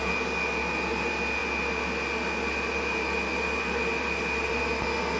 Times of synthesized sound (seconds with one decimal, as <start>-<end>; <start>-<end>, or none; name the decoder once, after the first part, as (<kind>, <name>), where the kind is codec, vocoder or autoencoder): none